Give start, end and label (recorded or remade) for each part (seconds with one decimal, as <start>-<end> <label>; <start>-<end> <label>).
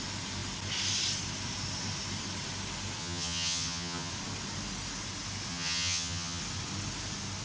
0.0-3.0 recorded; 3.0-4.1 remade; 4.1-5.5 recorded; 5.5-6.4 remade; 6.4-7.4 recorded